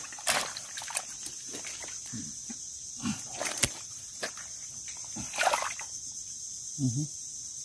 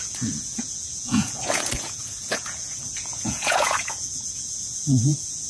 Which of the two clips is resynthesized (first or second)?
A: second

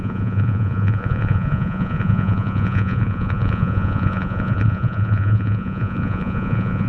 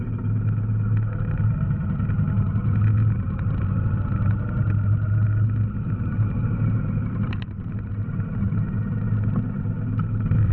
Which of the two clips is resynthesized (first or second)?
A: first